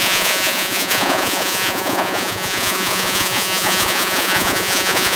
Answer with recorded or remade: remade